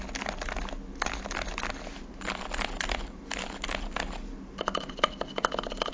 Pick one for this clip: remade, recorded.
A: recorded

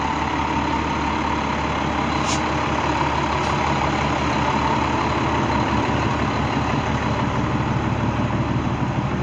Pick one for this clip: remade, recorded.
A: recorded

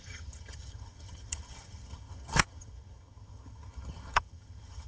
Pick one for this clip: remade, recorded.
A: remade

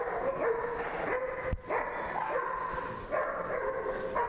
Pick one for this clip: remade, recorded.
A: recorded